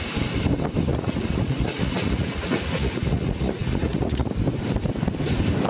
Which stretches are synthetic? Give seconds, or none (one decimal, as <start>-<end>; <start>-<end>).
0.9-4.3